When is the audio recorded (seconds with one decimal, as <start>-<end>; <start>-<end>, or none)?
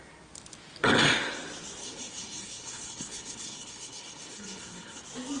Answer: 0.0-1.8; 5.0-5.4